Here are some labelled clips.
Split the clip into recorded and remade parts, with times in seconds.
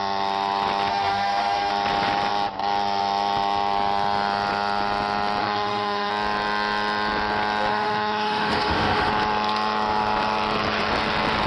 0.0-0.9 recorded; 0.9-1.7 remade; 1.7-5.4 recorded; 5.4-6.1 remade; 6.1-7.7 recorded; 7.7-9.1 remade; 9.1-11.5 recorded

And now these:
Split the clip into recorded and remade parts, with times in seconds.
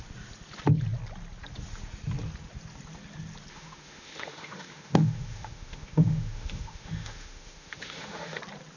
0.0-3.5 recorded; 3.5-8.4 remade; 8.4-8.8 recorded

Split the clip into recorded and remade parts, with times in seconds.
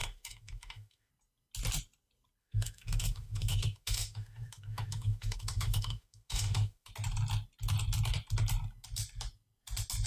0.0-1.1 remade; 1.1-2.4 recorded; 2.4-6.9 remade; 6.9-10.1 recorded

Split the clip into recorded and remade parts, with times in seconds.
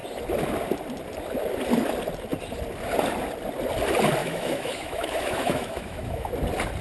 0.0-4.2 recorded; 4.2-6.3 remade; 6.3-6.8 recorded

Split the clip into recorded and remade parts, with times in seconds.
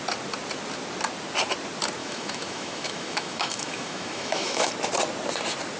0.0-2.0 recorded; 2.0-4.7 remade; 4.7-5.8 recorded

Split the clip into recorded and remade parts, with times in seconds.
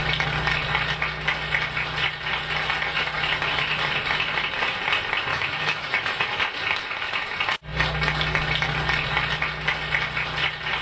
0.0-5.3 recorded; 5.3-6.4 remade; 6.4-10.8 recorded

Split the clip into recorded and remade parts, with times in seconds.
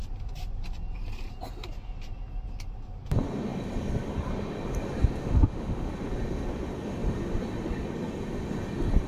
0.0-5.2 recorded; 5.2-5.9 remade; 5.9-9.1 recorded